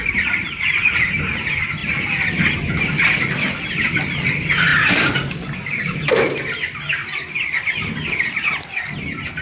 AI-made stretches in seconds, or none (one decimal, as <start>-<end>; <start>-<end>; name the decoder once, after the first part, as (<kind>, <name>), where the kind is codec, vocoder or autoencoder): none